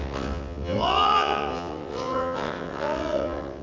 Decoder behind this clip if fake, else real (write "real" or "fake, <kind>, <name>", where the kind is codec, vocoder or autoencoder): fake, vocoder, WaveNeXt